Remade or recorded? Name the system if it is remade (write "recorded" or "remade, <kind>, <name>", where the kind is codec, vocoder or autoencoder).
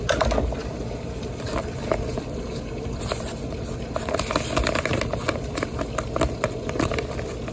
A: recorded